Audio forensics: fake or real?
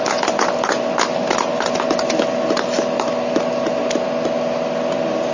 real